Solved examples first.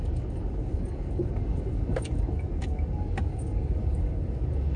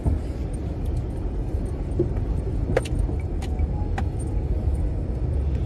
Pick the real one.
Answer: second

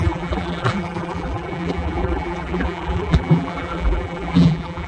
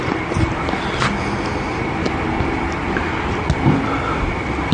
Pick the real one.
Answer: second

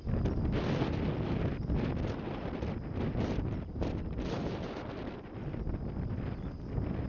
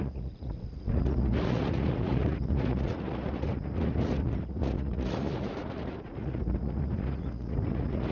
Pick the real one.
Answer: first